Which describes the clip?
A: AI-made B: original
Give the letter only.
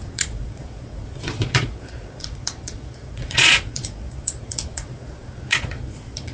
A